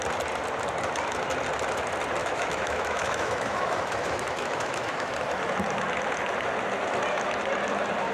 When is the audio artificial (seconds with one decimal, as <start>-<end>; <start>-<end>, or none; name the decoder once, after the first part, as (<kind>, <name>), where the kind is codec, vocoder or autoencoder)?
2.2-5.1 (autoencoder, DAC-VAE)